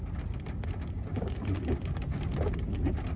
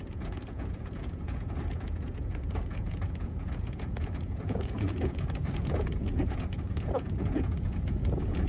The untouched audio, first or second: first